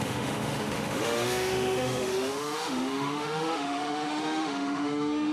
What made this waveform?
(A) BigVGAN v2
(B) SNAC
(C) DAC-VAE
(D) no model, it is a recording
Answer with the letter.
C